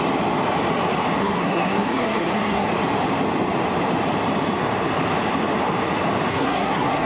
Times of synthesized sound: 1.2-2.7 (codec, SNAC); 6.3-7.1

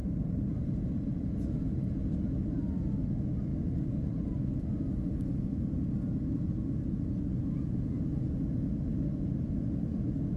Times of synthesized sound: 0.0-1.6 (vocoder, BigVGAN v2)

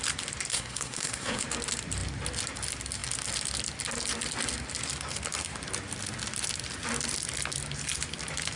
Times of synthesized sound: 0.5-1.4 (codec, SNAC)